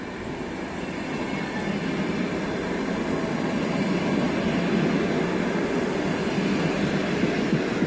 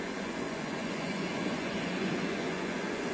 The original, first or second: first